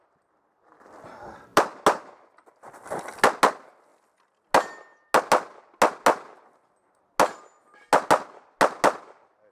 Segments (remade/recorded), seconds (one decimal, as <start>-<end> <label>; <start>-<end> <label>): 0.0-9.5 recorded